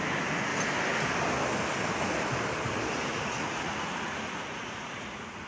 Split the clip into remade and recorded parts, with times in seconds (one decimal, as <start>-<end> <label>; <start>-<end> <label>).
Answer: 0.0-3.1 recorded; 3.1-5.5 remade